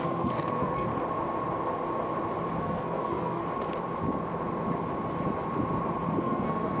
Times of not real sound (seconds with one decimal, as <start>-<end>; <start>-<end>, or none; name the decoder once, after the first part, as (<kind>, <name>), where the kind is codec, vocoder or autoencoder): 0.0-0.9 (codec, SNAC); 2.6-3.4; 6.2-6.8